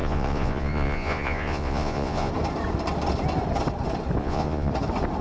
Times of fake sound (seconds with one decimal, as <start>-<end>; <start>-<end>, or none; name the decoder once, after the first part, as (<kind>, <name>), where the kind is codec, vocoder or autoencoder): 0.0-2.3 (vocoder, Vocos); 4.2-4.7